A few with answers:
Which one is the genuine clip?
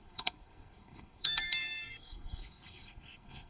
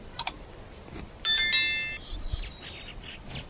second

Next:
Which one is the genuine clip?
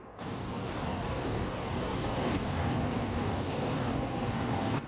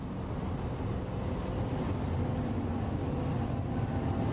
second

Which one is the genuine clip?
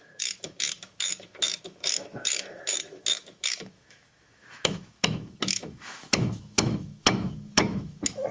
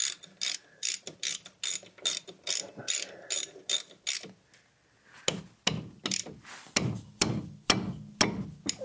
second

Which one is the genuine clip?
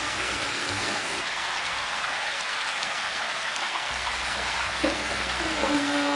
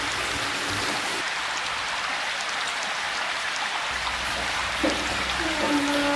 second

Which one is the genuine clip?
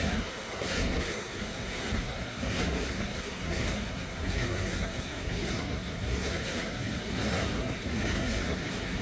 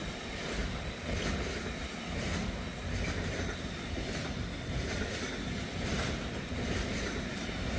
second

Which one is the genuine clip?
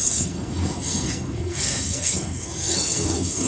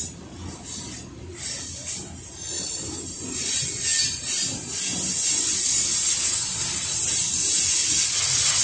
second